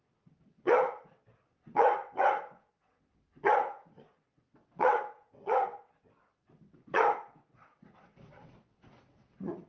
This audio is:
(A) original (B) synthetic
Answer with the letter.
B